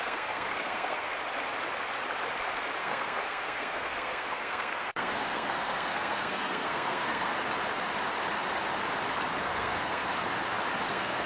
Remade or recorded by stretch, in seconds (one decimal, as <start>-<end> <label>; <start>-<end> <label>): 0.0-1.1 remade; 1.1-2.8 recorded; 2.8-7.3 remade; 7.3-9.4 recorded; 9.4-10.0 remade; 10.0-10.9 recorded; 10.9-11.3 remade